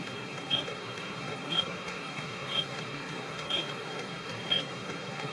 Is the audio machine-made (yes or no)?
yes